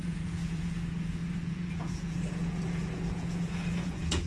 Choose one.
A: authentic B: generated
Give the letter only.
B